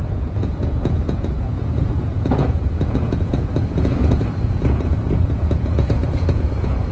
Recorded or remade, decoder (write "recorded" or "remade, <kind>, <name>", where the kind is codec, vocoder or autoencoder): remade, vocoder, Vocos